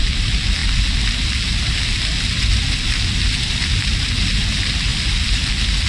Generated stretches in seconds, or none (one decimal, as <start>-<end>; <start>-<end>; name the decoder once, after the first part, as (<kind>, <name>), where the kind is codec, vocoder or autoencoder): none